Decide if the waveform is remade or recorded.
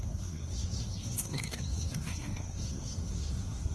remade